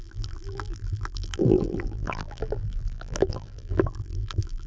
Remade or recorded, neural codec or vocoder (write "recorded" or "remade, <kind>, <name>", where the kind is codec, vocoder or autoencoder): remade, vocoder, BigVGAN v2